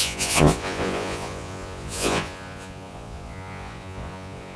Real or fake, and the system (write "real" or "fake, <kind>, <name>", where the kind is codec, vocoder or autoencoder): fake, vocoder, Vocos